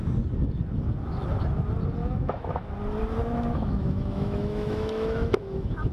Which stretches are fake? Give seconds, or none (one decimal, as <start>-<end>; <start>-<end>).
2.0-2.7; 3.2-5.9